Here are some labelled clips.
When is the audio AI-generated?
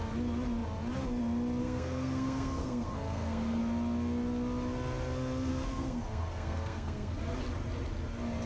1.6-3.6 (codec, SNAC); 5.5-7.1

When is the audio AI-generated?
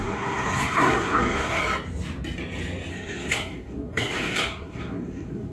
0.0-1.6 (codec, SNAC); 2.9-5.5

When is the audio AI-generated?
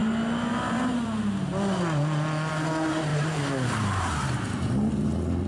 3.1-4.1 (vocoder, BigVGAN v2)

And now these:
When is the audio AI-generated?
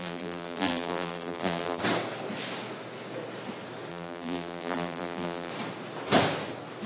0.0-1.8 (vocoder, BigVGAN v2); 3.9-5.5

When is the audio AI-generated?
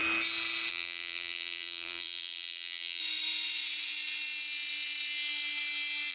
0.7-3.0 (vocoder, BigVGAN v2)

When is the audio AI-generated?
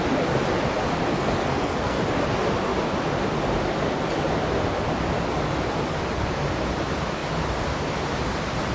1.1-2.0 (codec, SNAC)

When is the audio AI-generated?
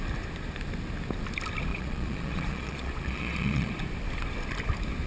1.7-3.7 (vocoder, Vocos)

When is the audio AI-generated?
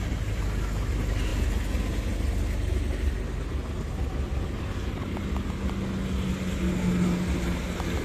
none